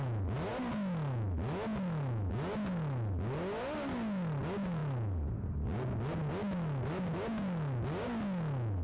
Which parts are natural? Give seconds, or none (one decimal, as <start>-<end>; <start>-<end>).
0.0-8.8